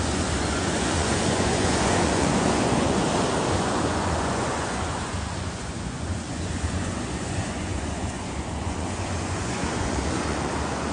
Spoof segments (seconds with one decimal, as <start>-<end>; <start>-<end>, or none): 0.0-3.0; 3.6-10.9